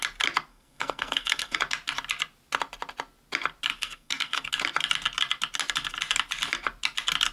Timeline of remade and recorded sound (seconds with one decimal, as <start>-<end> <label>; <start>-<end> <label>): 0.0-0.5 recorded; 0.5-1.6 remade; 1.6-3.7 recorded; 3.7-4.5 remade; 4.5-7.3 recorded